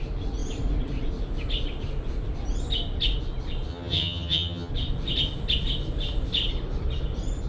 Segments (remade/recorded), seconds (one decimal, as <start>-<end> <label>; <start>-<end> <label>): 0.0-3.7 recorded; 3.7-4.7 remade; 4.7-7.5 recorded